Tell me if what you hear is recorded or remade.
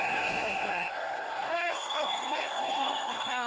remade